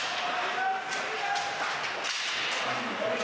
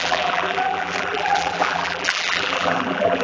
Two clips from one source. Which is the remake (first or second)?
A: second